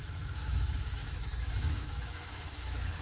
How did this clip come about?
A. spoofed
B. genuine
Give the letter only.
A